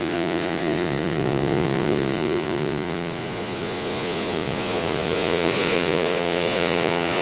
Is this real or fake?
fake